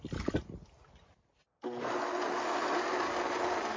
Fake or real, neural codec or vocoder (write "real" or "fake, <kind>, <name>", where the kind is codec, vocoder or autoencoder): real